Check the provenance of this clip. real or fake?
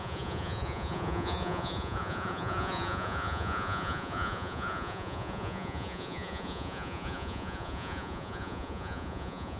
fake